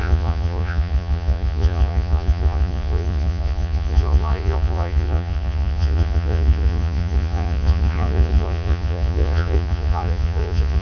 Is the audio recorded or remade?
remade